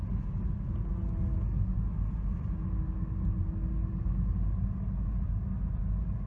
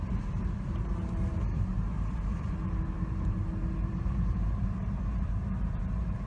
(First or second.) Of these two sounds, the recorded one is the first